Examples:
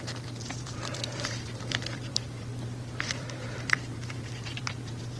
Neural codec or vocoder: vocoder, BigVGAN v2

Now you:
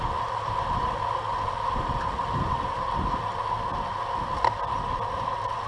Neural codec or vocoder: none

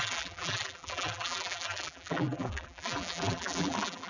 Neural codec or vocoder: vocoder, BigVGAN v2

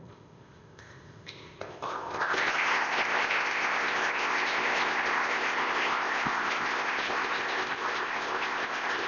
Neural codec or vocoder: codec, ZipCodec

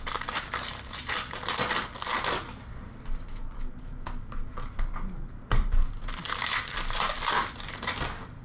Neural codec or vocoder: none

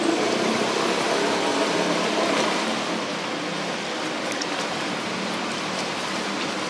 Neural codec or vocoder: vocoder, BigVGAN v2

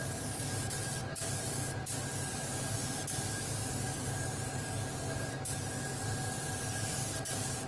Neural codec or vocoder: none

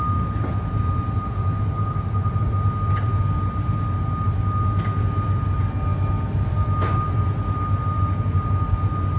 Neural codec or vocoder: none